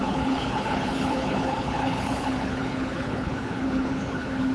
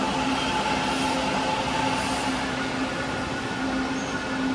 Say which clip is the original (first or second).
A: second